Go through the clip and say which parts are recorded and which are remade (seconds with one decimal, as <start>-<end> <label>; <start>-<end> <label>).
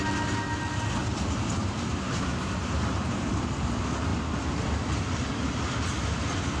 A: 0.0-1.0 recorded; 1.0-3.4 remade; 3.4-6.6 recorded